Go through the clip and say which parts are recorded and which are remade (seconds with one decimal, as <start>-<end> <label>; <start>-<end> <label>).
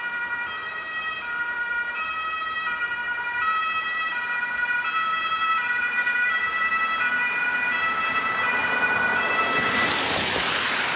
0.0-0.6 recorded; 0.6-2.1 remade; 2.1-3.0 recorded; 3.0-4.1 remade; 4.1-5.5 recorded; 5.5-6.4 remade; 6.4-11.0 recorded